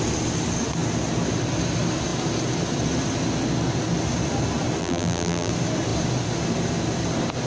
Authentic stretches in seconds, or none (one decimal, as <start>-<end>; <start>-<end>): 0.0-4.8; 5.5-7.5